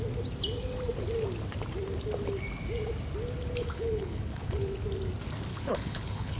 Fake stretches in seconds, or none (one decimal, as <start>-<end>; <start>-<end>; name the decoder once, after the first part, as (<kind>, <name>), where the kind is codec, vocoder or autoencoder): 3.6-4.7 (codec, HILCodec); 5.5-6.4